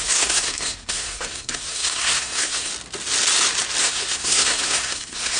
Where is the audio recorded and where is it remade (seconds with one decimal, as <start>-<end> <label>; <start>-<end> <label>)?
0.0-2.7 remade; 2.7-3.8 recorded; 3.8-5.4 remade